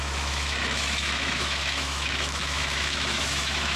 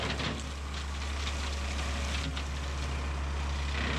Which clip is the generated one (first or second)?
first